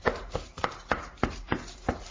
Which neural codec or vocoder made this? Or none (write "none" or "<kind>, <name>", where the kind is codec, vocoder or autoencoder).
none